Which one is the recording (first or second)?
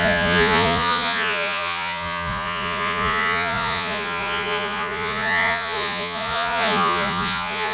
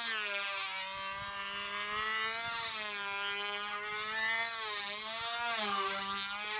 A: second